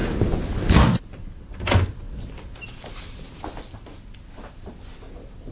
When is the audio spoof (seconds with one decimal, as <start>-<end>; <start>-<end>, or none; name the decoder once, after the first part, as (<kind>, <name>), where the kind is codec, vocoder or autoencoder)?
none